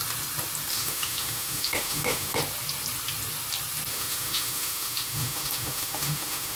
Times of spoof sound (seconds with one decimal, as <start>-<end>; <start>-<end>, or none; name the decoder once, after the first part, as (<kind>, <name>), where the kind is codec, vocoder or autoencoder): 0.7-2.4 (autoencoder, DAC-VAE); 3.9-6.6